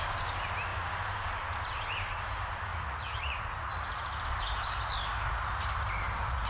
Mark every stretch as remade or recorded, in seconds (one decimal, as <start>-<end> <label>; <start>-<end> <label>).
0.0-2.7 recorded; 2.7-4.2 remade; 4.2-6.5 recorded